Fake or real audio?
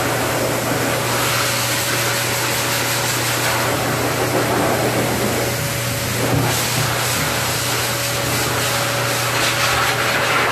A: real